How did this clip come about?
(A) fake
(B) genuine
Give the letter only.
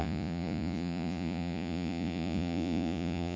A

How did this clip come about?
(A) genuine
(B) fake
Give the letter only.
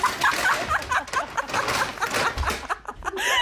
A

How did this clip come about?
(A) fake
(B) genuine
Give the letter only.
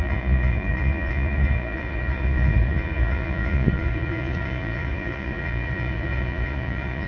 A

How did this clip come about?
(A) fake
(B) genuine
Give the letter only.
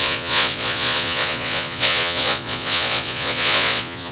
A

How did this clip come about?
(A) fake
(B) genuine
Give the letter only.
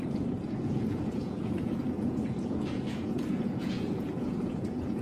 A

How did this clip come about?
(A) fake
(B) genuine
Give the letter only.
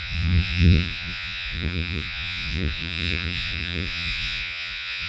A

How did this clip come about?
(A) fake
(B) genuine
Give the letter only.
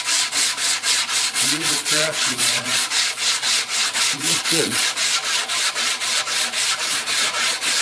A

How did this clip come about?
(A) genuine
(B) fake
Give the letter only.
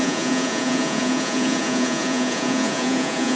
B